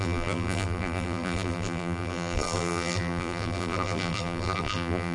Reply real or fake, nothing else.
fake